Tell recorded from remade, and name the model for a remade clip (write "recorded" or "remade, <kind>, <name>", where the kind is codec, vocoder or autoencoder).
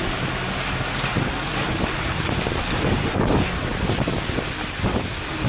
recorded